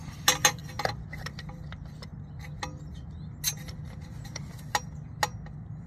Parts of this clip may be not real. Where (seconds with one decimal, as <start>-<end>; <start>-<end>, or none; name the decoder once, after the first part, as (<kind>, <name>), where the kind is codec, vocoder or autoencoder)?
none